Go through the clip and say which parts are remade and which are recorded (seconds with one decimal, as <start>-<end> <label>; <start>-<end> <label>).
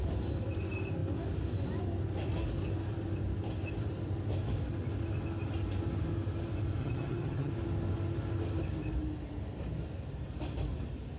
0.0-6.8 recorded; 6.8-7.5 remade; 7.5-11.2 recorded